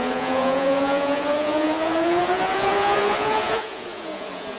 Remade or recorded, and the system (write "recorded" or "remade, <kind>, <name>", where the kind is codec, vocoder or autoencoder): remade, vocoder, Vocos